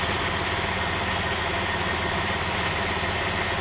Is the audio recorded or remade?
recorded